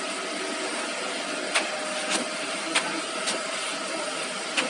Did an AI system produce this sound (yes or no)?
no